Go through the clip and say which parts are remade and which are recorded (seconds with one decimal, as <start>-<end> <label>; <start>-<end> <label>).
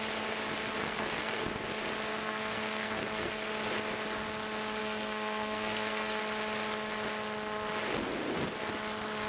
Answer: 0.0-0.8 recorded; 0.8-1.4 remade; 1.4-2.1 recorded; 2.1-3.5 remade; 3.5-4.8 recorded; 4.8-6.2 remade; 6.2-9.3 recorded